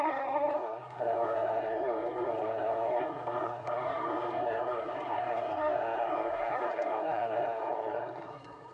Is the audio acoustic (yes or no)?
no